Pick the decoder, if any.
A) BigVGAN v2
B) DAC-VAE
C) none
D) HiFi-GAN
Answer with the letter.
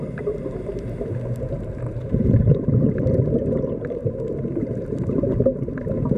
A